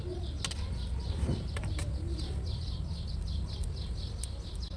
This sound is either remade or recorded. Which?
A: recorded